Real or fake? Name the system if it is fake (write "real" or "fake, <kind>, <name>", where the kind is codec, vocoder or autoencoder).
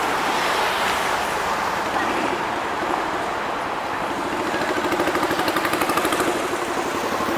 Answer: real